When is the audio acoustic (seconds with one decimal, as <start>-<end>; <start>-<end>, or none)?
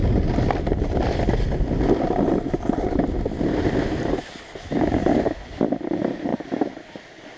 0.0-7.4